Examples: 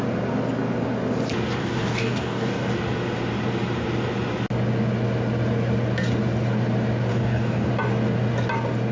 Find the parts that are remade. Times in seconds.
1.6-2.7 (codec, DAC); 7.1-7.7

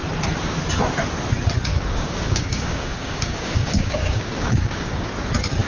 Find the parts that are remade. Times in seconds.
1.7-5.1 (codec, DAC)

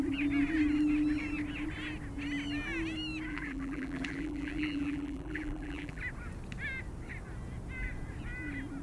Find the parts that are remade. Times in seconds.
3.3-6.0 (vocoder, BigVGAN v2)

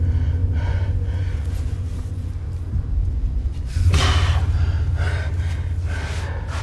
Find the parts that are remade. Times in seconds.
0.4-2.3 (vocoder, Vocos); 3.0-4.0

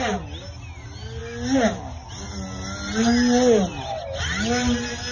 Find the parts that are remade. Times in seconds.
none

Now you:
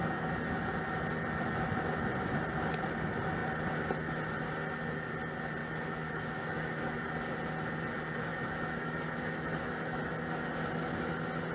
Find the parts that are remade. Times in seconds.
5.6-7.0 (autoencoder, DAC-VAE); 8.3-10.0

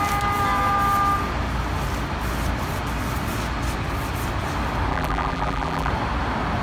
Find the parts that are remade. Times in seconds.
4.9-5.9 (vocoder, BigVGAN v2)